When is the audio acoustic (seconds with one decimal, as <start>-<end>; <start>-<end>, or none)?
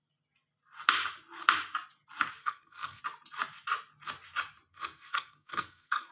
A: 0.0-2.4; 3.0-4.7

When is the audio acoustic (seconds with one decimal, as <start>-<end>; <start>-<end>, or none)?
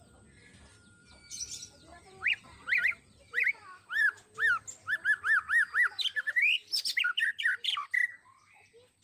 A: 0.0-1.0; 2.4-2.8; 4.2-9.0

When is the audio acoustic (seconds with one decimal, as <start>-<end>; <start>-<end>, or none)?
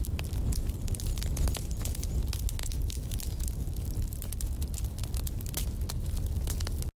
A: 0.0-2.6; 3.2-7.0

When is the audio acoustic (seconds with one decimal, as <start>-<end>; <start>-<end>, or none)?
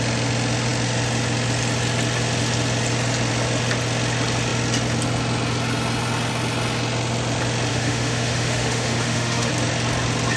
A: 0.0-7.7; 9.5-10.4